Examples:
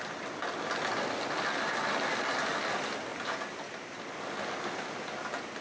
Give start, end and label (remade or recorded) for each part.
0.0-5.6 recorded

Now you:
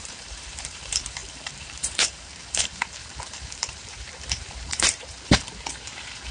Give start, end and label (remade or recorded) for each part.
0.0-6.3 remade

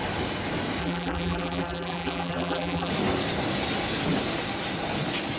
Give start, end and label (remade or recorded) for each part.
0.0-0.8 recorded; 0.8-2.9 remade; 2.9-5.4 recorded

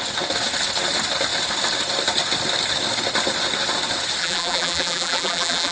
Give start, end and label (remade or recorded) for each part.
0.0-4.2 recorded; 4.2-5.7 remade